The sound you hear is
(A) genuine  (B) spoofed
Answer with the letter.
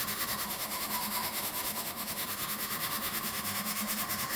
B